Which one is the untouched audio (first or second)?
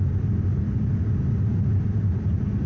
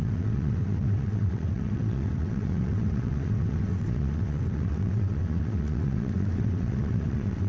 first